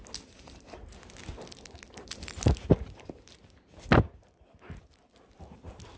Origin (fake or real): real